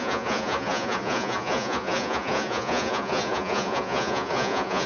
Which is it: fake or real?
fake